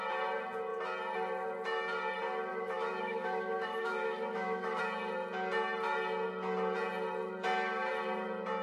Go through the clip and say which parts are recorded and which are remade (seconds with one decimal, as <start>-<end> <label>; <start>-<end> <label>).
0.0-2.5 recorded; 2.5-4.8 remade; 4.8-8.6 recorded